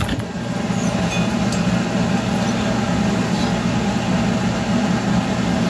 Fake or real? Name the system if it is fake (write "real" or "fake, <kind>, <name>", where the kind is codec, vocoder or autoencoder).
real